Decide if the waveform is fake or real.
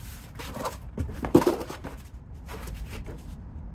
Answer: fake